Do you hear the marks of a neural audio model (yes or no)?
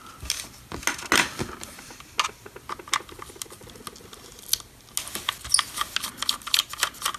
no